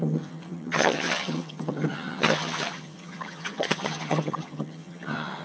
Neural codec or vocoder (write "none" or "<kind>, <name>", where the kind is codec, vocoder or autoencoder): vocoder, HiFi-GAN